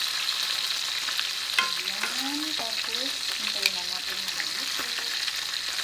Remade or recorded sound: recorded